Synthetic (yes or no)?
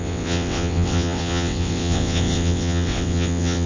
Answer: yes